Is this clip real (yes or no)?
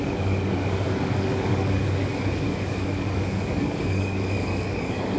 no